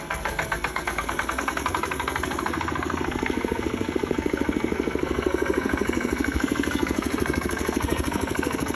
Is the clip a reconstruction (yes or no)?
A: yes